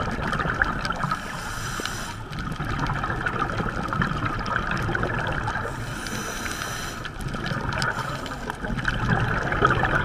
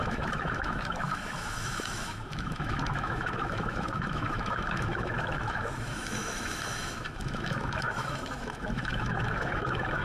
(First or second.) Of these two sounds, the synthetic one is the second